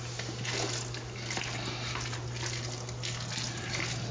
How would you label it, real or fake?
real